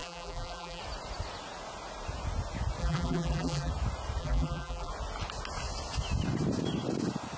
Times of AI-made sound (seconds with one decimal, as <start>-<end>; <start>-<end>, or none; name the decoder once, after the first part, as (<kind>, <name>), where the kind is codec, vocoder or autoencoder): 0.0-0.8 (vocoder, BigVGAN v2); 2.8-3.7; 4.2-4.9